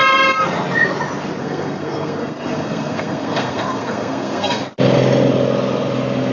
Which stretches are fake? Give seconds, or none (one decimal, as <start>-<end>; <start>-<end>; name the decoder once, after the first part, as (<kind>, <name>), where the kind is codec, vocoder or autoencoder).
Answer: 1.4-4.6 (codec, SNAC)